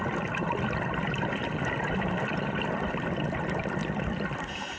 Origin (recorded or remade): recorded